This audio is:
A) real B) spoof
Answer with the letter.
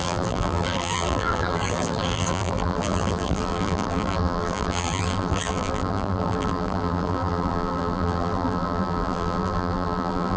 B